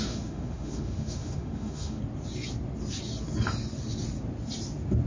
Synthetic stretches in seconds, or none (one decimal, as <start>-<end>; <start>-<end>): 0.0-2.0